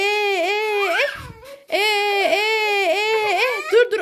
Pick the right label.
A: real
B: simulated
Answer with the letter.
A